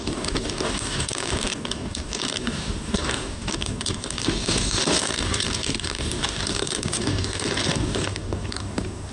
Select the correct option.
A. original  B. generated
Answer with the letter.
B